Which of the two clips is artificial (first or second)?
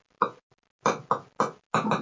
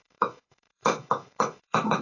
second